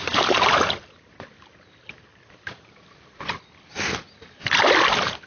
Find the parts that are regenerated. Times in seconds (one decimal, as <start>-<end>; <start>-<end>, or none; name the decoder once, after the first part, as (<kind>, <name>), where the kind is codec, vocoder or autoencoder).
none